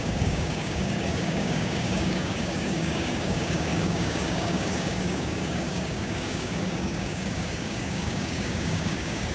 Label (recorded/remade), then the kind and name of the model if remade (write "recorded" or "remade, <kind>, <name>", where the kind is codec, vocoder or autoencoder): remade, codec, DAC